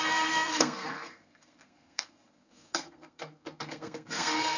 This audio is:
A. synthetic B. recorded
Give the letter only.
A